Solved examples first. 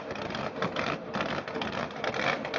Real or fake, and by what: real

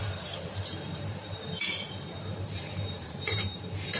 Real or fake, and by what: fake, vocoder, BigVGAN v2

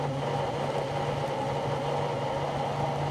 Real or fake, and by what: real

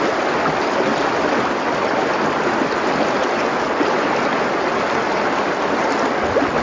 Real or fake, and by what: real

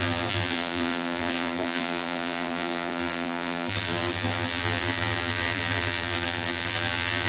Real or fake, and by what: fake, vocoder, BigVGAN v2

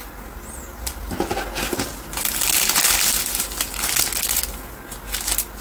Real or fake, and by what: real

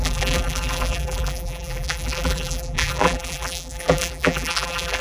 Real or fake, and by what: fake, vocoder, BigVGAN v2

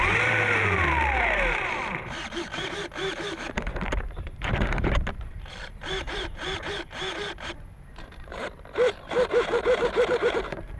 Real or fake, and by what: fake, vocoder, BigVGAN v2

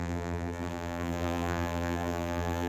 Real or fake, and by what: fake, vocoder, BigVGAN v2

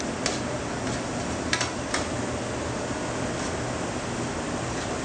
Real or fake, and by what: real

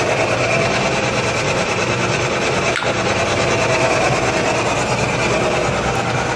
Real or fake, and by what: real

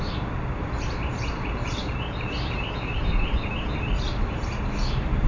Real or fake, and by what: fake, vocoder, BigVGAN v2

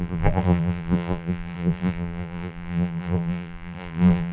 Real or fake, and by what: fake, vocoder, BigVGAN v2